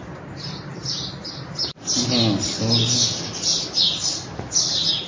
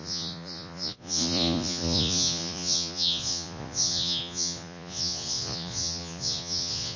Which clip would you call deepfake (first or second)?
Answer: second